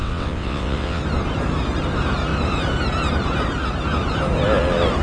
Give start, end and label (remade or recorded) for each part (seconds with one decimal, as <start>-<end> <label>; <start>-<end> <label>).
0.0-1.0 remade; 1.0-5.0 recorded